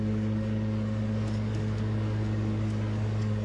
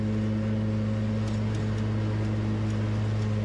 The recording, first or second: second